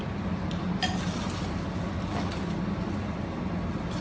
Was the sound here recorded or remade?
recorded